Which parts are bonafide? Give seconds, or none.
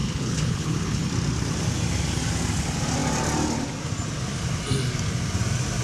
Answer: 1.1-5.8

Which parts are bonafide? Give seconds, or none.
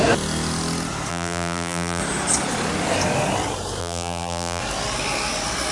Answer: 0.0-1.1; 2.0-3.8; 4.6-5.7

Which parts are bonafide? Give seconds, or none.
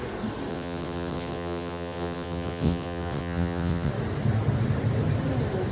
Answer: 0.0-0.5; 3.9-5.7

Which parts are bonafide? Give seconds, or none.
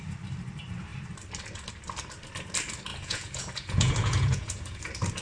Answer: 0.0-2.9; 4.8-5.2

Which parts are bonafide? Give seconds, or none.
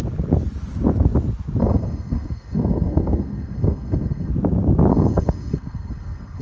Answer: 0.0-1.6; 4.3-4.9